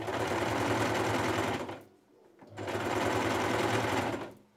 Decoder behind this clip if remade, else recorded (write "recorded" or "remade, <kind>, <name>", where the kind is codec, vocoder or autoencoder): recorded